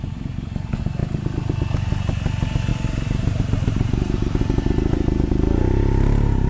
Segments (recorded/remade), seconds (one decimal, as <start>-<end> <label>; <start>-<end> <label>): 0.0-2.7 recorded; 2.7-4.4 remade; 4.4-6.5 recorded